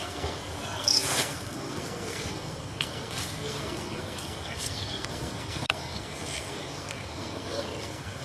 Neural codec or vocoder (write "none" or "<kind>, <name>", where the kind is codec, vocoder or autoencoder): codec, SNAC